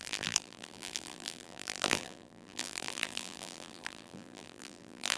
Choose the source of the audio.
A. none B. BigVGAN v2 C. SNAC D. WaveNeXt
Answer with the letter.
B